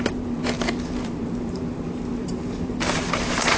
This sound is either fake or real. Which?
fake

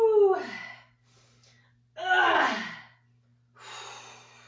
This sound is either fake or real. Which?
real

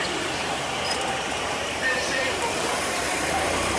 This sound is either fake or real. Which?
fake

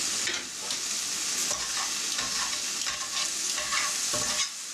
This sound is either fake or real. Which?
real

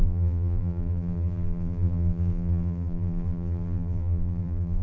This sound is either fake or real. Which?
fake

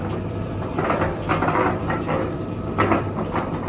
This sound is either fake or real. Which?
fake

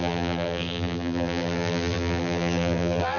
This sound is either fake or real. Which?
fake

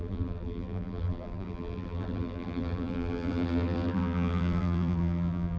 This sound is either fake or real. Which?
fake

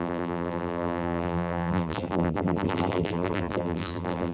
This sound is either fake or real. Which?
fake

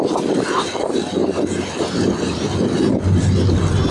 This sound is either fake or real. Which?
real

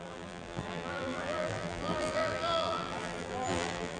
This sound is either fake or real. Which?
fake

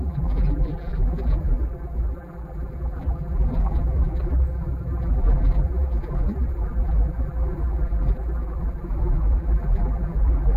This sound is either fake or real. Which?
fake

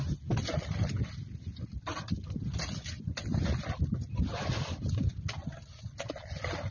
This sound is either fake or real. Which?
fake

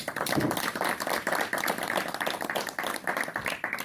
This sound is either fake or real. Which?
fake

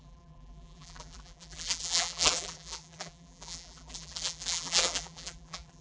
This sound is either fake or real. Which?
fake